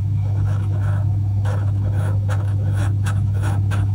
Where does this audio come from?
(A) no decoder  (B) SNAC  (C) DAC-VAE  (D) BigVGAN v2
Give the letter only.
C